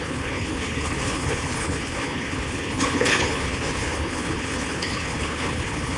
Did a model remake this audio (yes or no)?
yes